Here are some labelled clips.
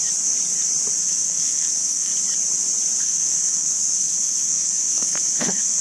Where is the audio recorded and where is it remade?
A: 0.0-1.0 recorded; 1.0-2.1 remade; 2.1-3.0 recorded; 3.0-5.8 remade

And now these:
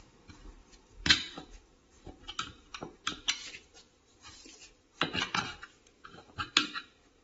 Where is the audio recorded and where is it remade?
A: 0.0-2.7 recorded; 2.7-6.5 remade; 6.5-7.2 recorded